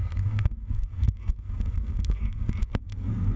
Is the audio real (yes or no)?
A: no